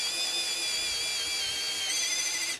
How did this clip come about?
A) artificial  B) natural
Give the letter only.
B